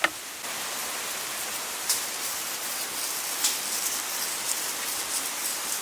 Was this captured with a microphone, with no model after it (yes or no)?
no